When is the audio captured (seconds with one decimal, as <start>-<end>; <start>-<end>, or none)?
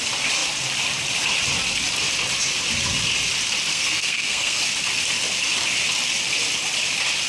0.0-3.7; 4.6-7.3